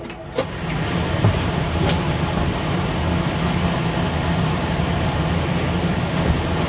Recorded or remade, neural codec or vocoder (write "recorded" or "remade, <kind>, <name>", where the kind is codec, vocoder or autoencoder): recorded